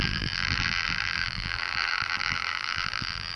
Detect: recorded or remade remade